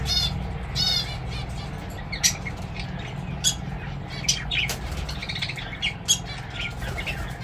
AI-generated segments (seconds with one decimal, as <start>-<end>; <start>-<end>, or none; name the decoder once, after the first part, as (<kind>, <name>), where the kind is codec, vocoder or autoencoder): none